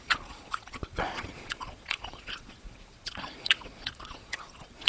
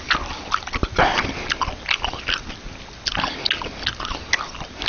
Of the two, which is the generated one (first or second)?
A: first